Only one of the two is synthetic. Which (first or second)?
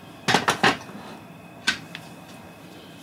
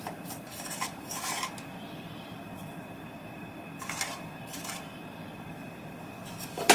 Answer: second